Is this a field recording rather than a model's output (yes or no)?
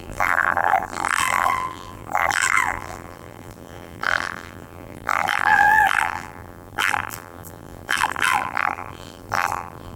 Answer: no